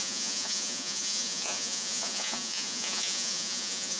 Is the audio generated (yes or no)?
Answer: yes